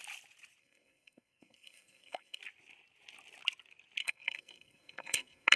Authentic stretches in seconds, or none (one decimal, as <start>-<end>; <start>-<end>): 0.0-0.6; 2.4-4.0